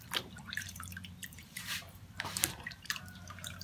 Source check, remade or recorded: remade